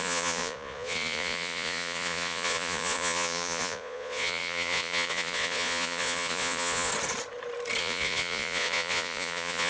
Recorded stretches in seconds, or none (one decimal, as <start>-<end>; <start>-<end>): 6.9-7.8